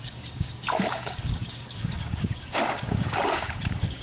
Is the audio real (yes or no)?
no